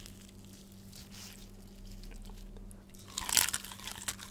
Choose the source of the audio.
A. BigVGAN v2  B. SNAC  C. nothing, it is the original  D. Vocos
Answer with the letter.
C